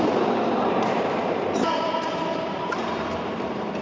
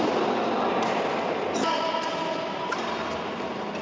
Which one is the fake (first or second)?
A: first